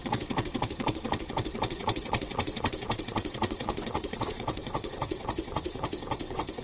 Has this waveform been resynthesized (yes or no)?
yes